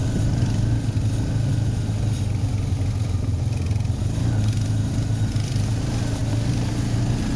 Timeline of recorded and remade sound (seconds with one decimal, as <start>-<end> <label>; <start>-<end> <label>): 0.0-7.4 recorded

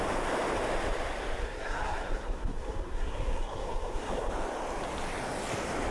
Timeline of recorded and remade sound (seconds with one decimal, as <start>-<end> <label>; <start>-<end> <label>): 0.0-1.4 recorded; 1.4-4.3 remade; 4.3-5.9 recorded

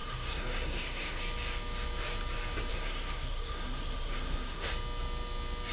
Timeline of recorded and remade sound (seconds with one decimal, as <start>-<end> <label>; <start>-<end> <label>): 0.0-1.2 remade; 1.2-2.7 recorded; 2.7-4.7 remade; 4.7-5.7 recorded

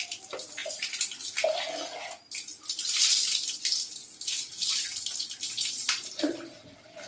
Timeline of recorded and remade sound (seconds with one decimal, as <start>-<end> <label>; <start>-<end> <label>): 0.0-7.1 recorded